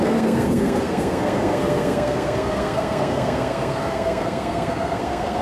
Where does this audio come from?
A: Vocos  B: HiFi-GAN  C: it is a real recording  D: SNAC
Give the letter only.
D